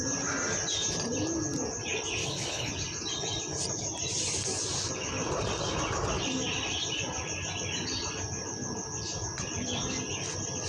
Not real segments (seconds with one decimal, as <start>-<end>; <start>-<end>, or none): 2.2-2.7